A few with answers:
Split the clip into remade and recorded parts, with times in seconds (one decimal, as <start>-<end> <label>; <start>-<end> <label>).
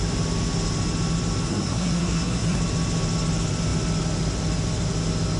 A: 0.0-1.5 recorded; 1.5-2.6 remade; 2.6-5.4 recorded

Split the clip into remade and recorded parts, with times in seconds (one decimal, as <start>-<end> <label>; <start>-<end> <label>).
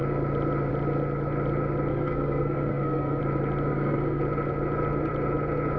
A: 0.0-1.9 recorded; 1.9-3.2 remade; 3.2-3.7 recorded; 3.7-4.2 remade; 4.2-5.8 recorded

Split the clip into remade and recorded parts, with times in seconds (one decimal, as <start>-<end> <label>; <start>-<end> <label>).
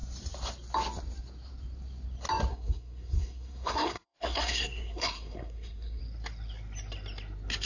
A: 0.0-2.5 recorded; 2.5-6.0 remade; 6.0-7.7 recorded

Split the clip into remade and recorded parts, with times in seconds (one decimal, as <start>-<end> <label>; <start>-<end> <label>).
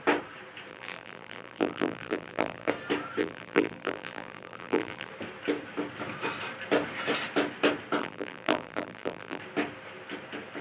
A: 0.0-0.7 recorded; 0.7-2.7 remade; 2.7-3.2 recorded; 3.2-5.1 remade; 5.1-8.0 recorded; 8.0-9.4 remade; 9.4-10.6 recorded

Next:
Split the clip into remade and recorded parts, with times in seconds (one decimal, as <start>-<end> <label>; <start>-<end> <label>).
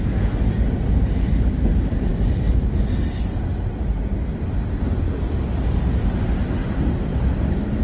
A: 0.0-7.8 recorded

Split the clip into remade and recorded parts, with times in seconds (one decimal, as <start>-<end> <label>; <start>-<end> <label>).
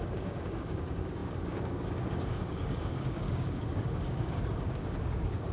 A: 0.0-5.5 remade